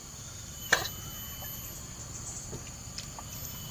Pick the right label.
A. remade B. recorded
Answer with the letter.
B